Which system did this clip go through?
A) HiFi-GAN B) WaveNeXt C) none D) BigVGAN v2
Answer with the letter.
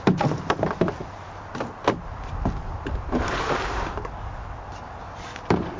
C